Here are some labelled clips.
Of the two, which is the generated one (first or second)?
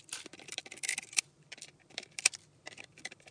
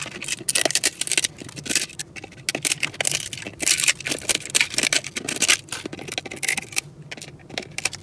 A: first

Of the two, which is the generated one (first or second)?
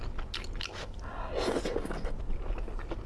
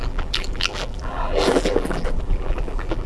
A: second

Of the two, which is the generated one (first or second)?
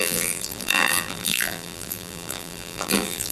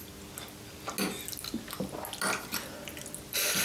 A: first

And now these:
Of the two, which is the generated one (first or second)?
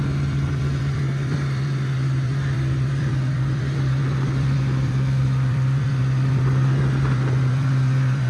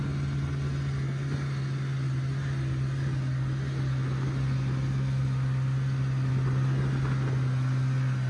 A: first